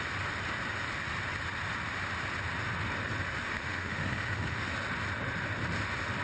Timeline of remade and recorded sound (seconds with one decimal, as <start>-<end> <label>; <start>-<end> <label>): 0.0-3.4 recorded; 3.4-4.7 remade; 4.7-6.2 recorded